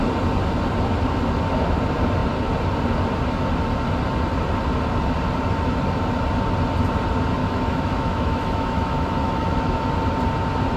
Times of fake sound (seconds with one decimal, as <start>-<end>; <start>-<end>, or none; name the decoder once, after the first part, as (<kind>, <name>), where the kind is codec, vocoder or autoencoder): 7.4-9.9 (autoencoder, DAC-VAE)